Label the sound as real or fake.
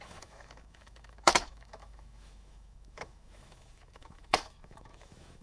fake